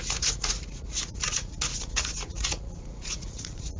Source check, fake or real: fake